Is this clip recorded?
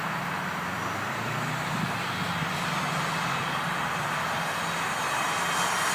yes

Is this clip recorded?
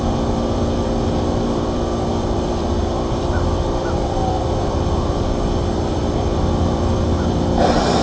no